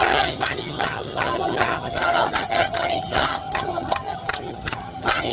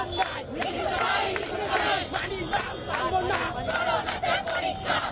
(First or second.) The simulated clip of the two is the first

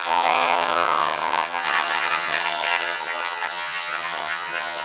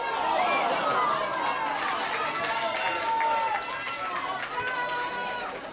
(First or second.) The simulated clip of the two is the first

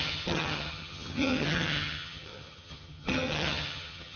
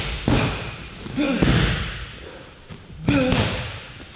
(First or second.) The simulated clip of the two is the first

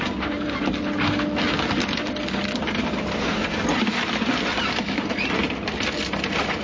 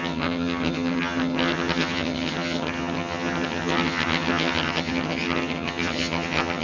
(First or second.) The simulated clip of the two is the second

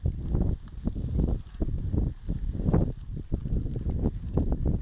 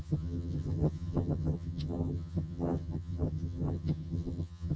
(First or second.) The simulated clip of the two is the second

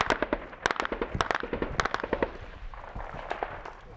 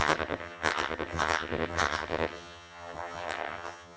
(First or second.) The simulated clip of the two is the second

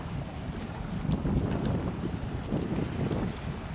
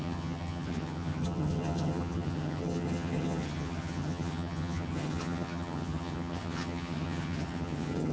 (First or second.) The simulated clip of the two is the second